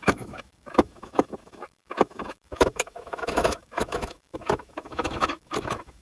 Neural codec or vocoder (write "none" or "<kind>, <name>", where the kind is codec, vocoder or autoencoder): autoencoder, DAC-VAE